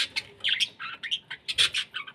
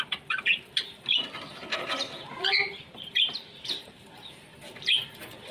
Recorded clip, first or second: first